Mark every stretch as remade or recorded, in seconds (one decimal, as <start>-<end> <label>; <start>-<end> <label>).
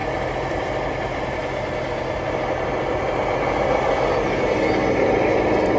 0.0-5.8 recorded